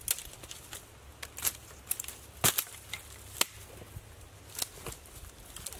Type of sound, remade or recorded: recorded